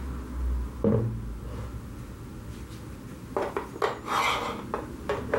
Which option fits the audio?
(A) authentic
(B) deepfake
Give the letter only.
A